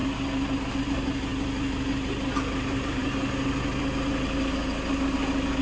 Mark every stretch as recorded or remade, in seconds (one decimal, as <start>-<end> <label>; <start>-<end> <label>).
0.0-5.6 recorded